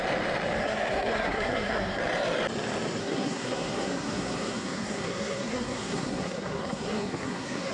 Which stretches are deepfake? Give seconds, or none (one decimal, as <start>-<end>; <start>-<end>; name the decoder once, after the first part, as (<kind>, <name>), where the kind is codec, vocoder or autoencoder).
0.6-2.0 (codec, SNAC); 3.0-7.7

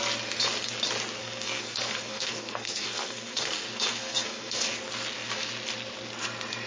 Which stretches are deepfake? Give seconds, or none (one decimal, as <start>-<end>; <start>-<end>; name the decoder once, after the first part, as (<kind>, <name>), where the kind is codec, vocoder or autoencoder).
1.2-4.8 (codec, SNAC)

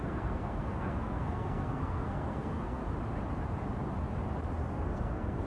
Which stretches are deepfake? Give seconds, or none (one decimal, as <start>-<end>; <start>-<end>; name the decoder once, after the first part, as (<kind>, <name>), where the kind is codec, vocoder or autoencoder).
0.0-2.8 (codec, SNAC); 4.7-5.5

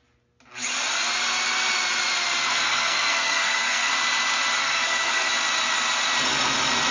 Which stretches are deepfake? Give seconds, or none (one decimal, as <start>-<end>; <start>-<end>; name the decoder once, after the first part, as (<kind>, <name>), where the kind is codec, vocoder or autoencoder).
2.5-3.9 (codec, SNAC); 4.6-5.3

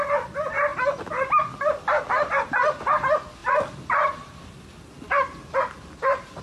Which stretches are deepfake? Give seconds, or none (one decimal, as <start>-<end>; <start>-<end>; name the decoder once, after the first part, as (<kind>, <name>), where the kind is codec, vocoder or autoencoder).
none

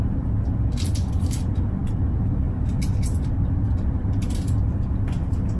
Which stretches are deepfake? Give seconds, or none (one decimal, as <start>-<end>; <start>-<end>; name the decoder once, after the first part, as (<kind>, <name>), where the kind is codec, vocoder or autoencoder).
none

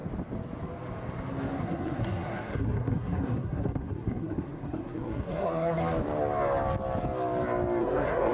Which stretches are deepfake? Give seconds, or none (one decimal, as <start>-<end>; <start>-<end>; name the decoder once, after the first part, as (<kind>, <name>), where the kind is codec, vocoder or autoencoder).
1.6-5.8 (codec, SNAC); 7.8-8.3

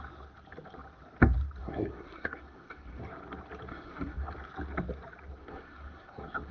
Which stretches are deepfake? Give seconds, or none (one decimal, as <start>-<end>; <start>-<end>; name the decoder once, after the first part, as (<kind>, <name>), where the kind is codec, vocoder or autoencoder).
1.6-3.0 (codec, SNAC); 3.7-4.3; 5.4-6.5